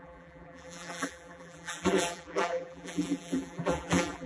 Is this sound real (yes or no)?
no